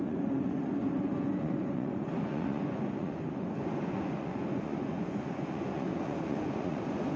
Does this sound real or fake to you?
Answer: fake